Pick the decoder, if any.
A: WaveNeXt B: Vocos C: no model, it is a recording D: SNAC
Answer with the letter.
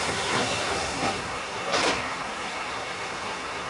D